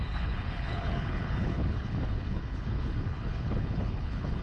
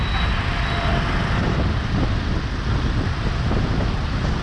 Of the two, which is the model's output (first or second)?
first